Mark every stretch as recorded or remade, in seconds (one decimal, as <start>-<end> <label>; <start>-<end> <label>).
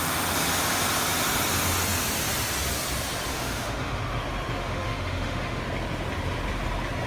0.0-3.3 recorded; 3.3-4.0 remade; 4.0-4.6 recorded; 4.6-5.6 remade; 5.6-7.1 recorded